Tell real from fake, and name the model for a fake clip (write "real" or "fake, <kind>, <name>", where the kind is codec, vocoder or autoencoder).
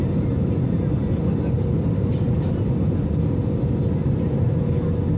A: real